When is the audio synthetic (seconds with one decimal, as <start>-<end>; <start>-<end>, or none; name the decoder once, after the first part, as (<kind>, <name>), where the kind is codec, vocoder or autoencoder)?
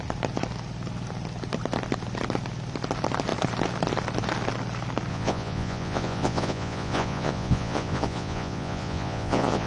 5.1-9.7 (vocoder, Vocos)